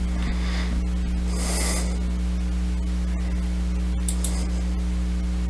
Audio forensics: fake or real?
real